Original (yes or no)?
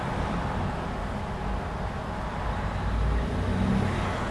yes